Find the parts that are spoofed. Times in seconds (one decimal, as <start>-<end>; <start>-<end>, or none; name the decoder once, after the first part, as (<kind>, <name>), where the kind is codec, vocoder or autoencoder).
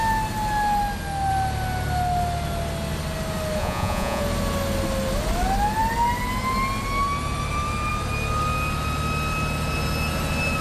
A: 3.6-4.2 (vocoder, Vocos)